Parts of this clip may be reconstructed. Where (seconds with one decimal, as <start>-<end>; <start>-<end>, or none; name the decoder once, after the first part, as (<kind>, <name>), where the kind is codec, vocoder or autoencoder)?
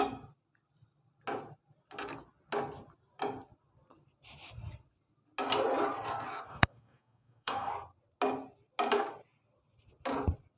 6.5-7.7 (codec, DAC)